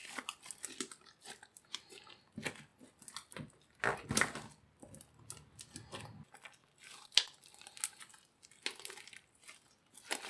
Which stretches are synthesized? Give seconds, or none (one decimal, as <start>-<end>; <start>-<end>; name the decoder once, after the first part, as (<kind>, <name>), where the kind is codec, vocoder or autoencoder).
none